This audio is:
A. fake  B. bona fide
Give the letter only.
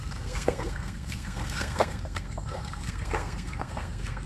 A